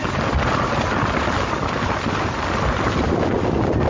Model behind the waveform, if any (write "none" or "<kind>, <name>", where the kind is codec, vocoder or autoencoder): none